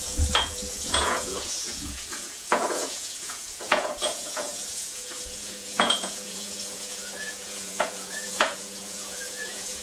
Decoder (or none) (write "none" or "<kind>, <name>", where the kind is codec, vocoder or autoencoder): vocoder, Vocos